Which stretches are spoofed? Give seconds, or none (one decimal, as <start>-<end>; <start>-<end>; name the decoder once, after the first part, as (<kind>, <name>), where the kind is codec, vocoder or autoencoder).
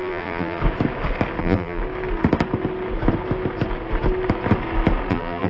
0.0-0.6 (vocoder, BigVGAN v2); 1.4-1.8; 5.1-5.5